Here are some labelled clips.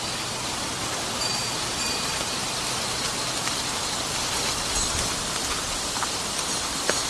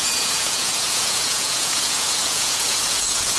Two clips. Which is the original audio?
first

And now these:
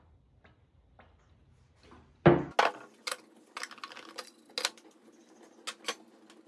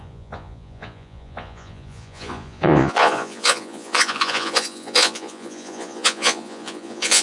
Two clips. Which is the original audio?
first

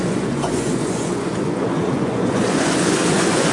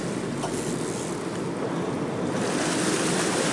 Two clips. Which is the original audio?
second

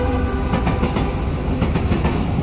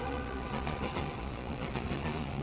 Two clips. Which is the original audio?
first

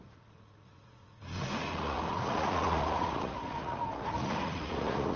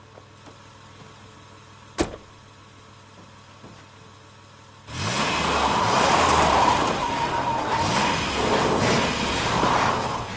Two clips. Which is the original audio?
second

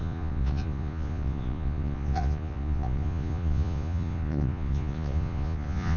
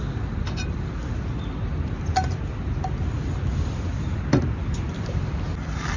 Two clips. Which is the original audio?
second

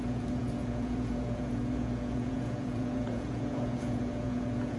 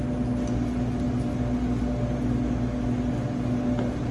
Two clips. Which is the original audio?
second